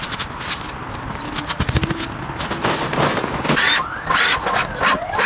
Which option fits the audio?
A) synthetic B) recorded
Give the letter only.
B